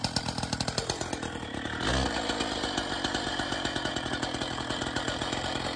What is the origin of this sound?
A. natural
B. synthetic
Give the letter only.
A